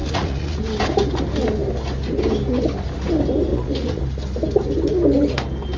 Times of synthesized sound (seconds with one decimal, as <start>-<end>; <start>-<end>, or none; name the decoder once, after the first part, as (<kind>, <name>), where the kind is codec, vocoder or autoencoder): 0.0-0.6 (vocoder, Vocos); 3.5-4.0